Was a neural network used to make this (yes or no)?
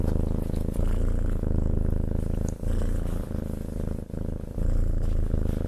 no